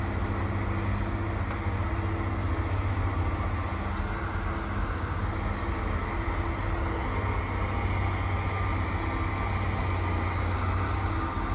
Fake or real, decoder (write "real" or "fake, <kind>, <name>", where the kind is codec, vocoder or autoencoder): real